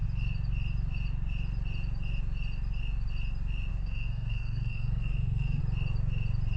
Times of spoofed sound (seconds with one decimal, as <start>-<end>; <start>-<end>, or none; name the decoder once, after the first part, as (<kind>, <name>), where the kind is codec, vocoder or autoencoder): 3.7-5.6 (codec, SNAC)